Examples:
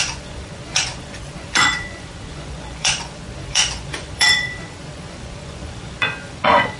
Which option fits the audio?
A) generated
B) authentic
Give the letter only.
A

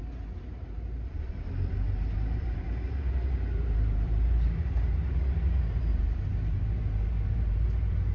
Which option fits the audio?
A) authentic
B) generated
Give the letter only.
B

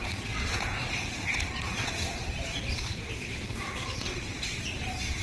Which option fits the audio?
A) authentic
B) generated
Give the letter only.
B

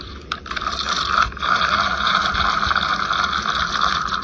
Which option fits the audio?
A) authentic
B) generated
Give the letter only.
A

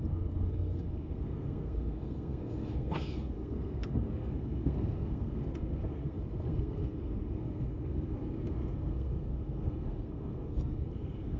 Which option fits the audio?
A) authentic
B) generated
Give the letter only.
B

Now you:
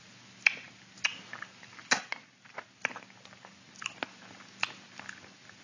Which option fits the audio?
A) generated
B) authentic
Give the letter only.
B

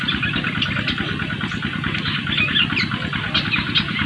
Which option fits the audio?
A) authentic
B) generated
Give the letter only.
A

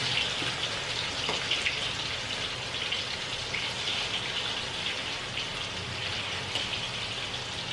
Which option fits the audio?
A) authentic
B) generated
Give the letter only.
A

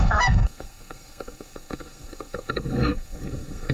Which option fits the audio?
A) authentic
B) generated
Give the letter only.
B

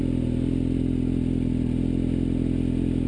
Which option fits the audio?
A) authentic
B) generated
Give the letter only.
A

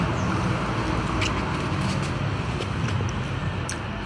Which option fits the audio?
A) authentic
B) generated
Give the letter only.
A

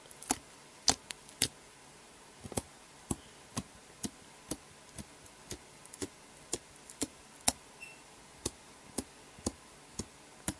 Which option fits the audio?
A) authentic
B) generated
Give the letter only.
A